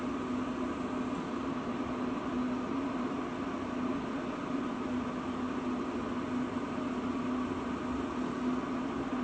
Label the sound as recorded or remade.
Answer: recorded